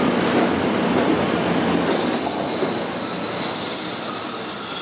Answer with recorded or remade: recorded